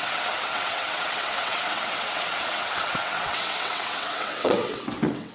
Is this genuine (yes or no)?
no